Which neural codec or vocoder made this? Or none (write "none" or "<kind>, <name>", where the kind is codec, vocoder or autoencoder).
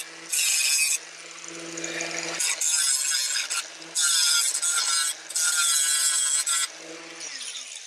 none